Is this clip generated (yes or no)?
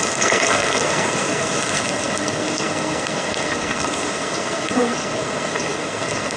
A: yes